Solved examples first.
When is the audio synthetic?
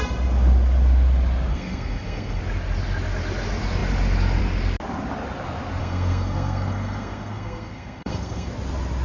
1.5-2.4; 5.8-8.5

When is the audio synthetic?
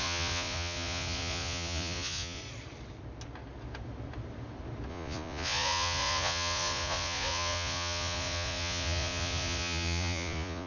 0.0-2.4; 4.9-10.7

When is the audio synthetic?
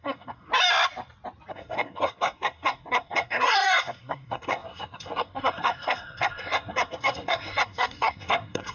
0.0-0.5; 1.5-8.7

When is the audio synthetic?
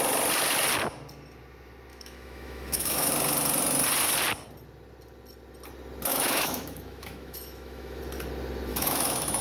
1.9-3.1; 6.1-8.0; 8.7-9.4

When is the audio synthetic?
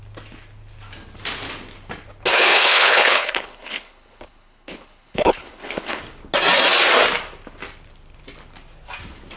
2.3-6.0